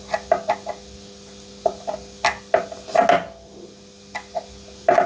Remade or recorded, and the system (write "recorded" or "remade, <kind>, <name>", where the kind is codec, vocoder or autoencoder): recorded